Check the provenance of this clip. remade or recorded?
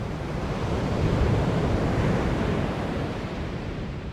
remade